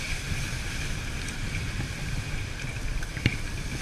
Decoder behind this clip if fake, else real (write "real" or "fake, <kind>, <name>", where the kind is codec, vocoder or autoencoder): fake, vocoder, BigVGAN v2